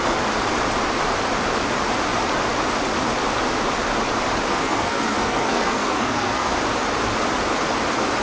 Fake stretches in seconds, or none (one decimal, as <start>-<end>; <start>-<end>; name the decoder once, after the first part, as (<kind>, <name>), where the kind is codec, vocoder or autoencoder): 4.5-6.5 (codec, SNAC)